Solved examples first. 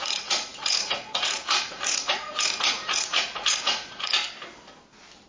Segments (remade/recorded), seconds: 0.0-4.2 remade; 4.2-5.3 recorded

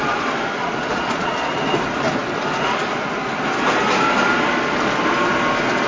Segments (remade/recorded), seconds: 0.0-0.6 recorded; 0.6-1.5 remade; 1.5-5.9 recorded

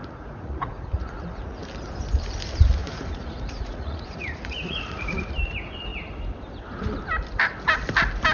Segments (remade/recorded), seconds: 0.0-1.6 remade; 1.6-2.8 recorded; 2.8-5.3 remade; 5.3-8.3 recorded

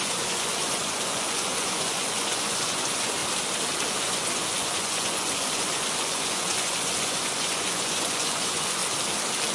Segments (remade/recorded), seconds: 0.0-3.2 remade; 3.2-3.9 recorded; 3.9-8.8 remade; 8.8-9.5 recorded

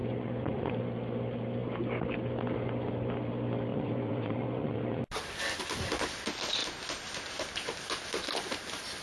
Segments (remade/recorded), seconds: 0.0-0.8 remade; 0.8-3.7 recorded; 3.7-5.0 remade; 5.0-9.0 recorded

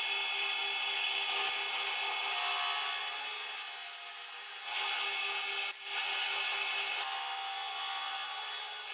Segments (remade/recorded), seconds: 0.0-8.9 recorded

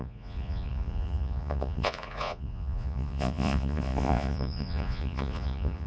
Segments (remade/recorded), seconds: 0.0-5.9 remade